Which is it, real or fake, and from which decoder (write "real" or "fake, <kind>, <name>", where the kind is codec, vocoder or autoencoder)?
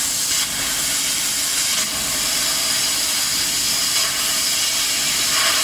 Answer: real